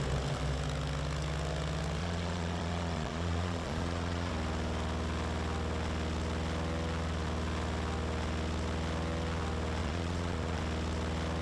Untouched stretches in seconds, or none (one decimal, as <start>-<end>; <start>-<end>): 0.0-2.0; 4.3-9.8; 10.6-11.4